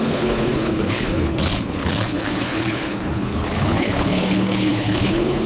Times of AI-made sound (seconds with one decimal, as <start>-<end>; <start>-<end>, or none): 0.0-5.5